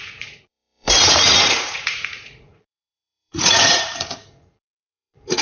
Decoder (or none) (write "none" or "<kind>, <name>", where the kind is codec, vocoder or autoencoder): vocoder, Vocos